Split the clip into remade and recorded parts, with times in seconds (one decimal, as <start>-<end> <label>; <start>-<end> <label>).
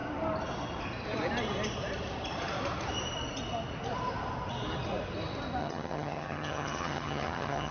0.0-5.6 recorded; 5.6-7.7 remade